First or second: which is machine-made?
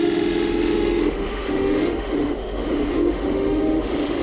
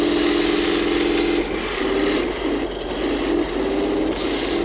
first